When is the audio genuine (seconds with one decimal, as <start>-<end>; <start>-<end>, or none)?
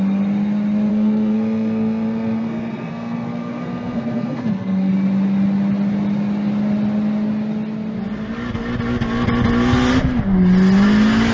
0.0-0.9; 4.9-11.3